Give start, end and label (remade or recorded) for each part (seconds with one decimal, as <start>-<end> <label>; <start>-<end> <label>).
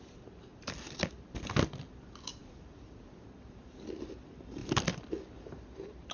0.0-6.1 recorded